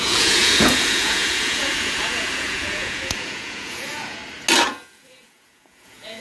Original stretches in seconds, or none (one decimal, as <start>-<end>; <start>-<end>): 4.2-4.7